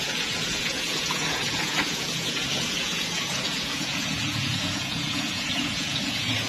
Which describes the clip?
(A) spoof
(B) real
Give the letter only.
A